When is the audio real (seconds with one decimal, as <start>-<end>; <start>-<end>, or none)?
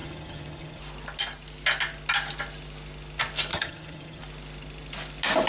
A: 0.8-3.5; 4.2-5.5